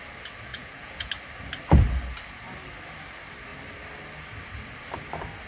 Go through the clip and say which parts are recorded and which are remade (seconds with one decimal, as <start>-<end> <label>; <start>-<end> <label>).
0.0-0.5 recorded; 0.5-1.1 remade; 1.1-5.5 recorded